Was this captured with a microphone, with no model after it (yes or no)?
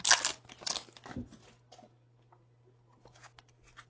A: yes